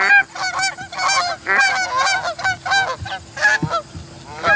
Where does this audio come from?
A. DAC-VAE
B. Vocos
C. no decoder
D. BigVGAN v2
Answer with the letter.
C